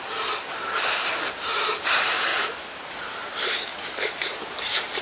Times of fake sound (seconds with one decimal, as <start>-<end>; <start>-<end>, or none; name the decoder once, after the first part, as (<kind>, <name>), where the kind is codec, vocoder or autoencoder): 0.0-2.3 (vocoder, BigVGAN v2); 2.9-5.0